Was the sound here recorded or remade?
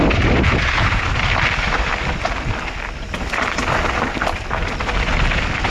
recorded